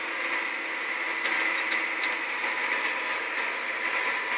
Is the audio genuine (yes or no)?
yes